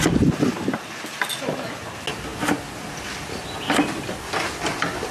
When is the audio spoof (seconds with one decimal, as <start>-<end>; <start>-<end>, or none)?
none